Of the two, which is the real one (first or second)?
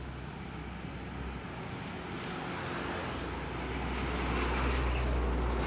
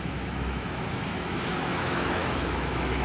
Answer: first